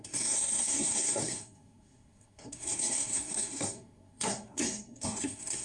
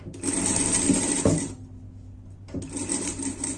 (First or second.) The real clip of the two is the second